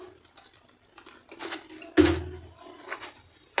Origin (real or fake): real